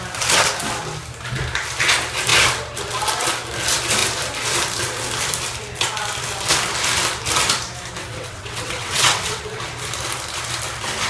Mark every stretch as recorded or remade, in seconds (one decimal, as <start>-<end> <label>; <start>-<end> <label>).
0.0-8.0 recorded; 8.0-9.4 remade; 9.4-11.1 recorded